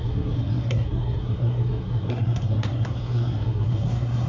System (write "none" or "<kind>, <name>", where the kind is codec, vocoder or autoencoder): codec, SNAC